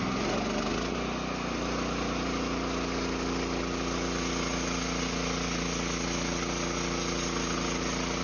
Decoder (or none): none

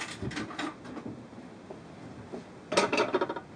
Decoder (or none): none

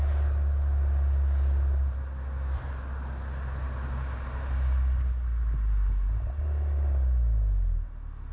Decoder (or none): none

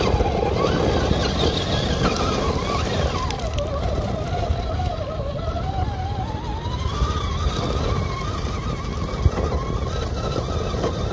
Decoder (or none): none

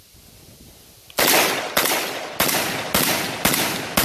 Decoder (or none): none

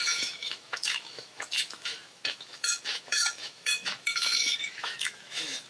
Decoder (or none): autoencoder, DAC-VAE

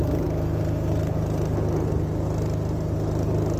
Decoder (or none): none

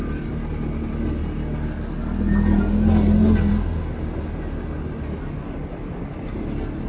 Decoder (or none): none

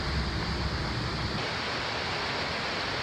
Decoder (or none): none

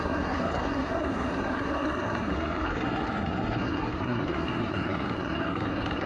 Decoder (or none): codec, SNAC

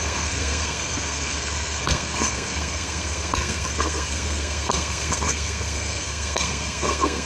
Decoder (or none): codec, SNAC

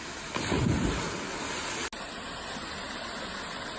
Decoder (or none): none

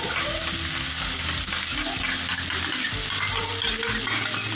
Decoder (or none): none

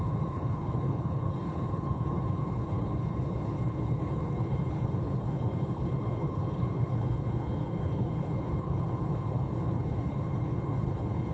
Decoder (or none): codec, HILCodec